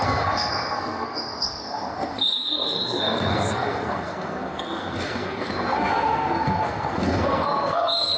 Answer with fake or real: fake